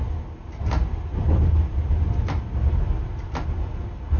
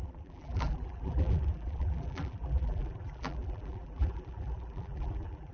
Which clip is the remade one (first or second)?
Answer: second